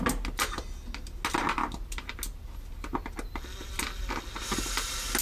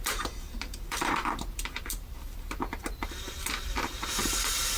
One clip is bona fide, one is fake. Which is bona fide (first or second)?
first